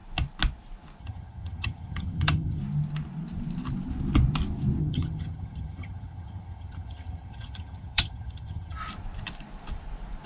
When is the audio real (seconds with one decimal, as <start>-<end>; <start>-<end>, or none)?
0.0-1.0; 2.6-4.8; 8.8-10.3